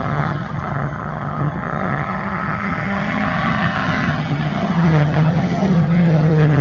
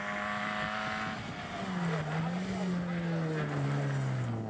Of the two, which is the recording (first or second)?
second